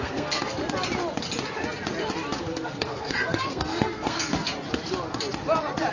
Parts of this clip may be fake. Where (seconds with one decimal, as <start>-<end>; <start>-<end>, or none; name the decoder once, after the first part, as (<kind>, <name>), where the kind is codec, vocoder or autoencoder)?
0.0-0.6 (codec, SNAC); 2.4-4.3